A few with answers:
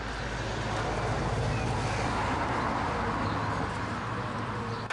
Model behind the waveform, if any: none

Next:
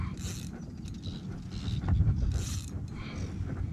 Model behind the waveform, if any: none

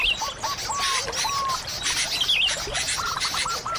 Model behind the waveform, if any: none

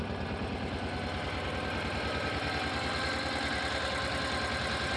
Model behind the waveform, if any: none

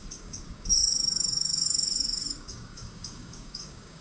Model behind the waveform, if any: codec, DAC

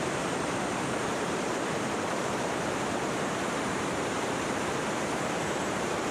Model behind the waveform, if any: vocoder, BigVGAN v2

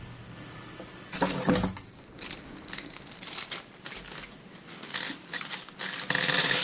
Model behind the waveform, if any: none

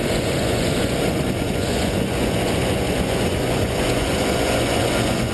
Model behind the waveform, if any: vocoder, Vocos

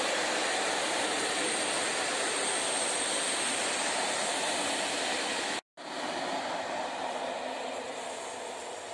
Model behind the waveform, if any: none